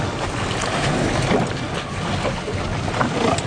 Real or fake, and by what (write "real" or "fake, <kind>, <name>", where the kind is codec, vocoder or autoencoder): real